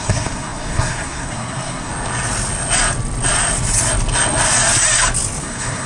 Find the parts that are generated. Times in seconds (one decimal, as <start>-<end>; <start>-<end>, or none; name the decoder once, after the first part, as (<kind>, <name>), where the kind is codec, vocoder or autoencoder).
0.0-1.9 (codec, SNAC); 5.4-5.9